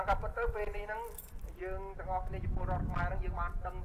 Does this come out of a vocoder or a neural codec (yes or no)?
no